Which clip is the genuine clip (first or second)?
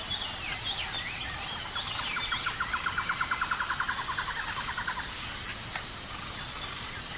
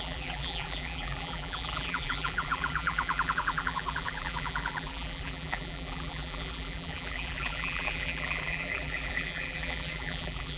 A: first